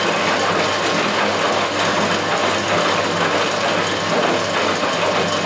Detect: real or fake real